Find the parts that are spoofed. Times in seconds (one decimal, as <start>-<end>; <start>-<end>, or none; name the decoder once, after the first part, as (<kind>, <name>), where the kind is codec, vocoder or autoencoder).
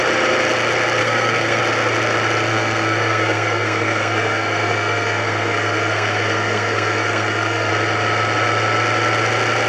1.0-1.6 (codec, SNAC); 2.5-7.7